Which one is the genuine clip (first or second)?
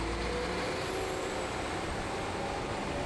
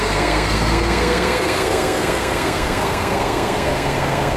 first